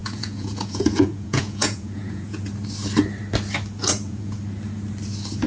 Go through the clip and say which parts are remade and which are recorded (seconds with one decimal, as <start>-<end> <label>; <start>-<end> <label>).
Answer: 0.0-2.4 remade; 2.4-3.8 recorded; 3.8-4.4 remade; 4.4-5.5 recorded